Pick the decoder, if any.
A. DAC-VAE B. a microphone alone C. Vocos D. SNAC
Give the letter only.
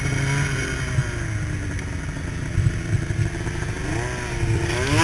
B